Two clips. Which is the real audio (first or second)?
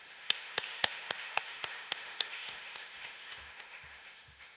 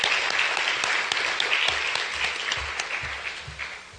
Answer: second